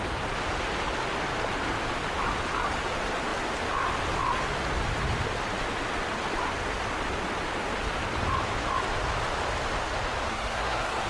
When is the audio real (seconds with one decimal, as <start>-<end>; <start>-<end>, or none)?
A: 0.0-10.3